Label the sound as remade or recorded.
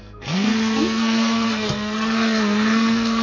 remade